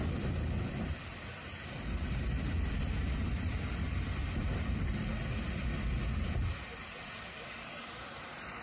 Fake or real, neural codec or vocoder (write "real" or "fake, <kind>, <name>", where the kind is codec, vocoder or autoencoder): fake, vocoder, BigVGAN v2